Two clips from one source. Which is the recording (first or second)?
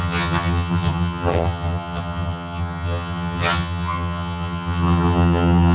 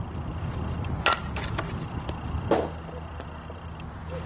second